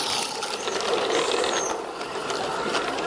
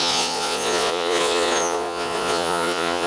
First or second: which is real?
first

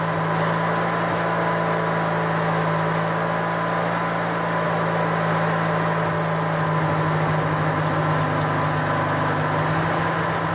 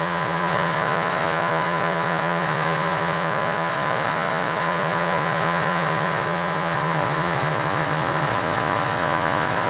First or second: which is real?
first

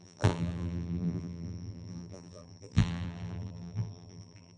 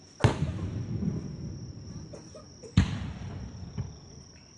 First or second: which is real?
second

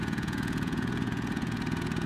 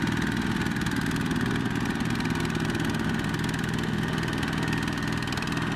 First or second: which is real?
second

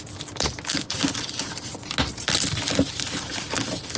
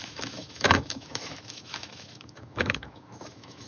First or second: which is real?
first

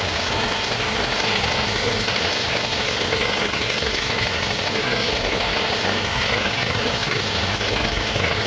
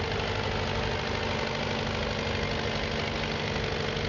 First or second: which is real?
second